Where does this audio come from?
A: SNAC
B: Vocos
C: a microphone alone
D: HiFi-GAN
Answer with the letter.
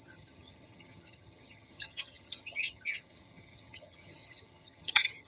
D